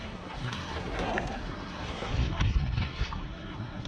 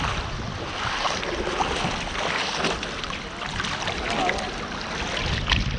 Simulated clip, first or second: first